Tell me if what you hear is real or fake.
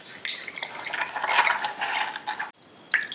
real